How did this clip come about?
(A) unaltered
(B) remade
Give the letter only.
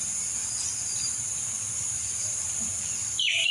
A